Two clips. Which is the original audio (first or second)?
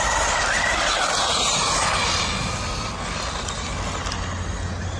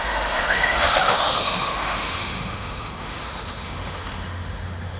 first